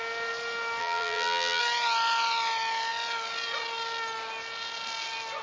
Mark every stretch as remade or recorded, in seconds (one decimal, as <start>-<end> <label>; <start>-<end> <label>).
0.0-0.8 recorded; 0.8-1.6 remade; 1.6-5.4 recorded